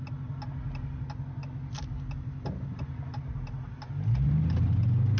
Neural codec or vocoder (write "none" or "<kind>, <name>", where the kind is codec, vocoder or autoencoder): none